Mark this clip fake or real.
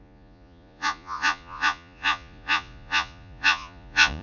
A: fake